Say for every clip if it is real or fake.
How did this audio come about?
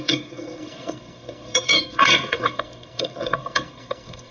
fake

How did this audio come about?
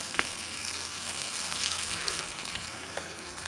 fake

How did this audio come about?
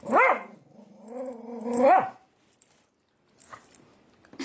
real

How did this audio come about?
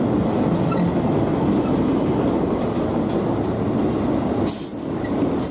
real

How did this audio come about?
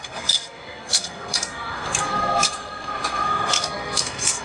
fake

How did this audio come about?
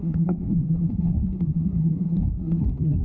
fake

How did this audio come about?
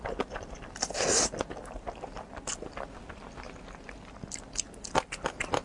real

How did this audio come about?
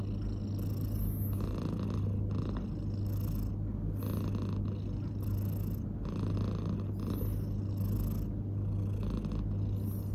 real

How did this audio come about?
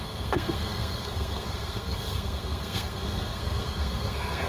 fake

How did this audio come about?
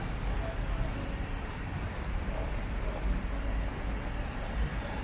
real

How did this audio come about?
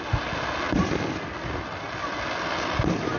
real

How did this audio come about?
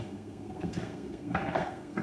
fake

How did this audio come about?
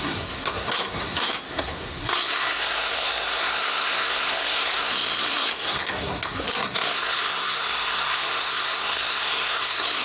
fake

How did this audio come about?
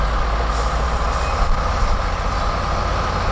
real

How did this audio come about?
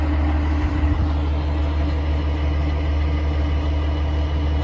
real